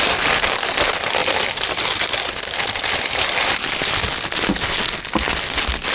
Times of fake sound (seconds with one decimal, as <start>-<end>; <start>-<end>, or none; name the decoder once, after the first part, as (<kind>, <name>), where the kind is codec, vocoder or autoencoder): none